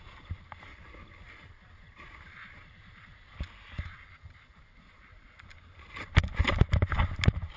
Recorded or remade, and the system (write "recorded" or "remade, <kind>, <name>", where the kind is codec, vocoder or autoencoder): recorded